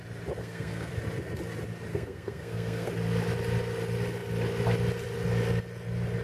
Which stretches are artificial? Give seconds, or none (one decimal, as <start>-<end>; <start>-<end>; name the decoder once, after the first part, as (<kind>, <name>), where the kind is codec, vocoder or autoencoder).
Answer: 0.4-1.0 (codec, SNAC); 1.9-2.9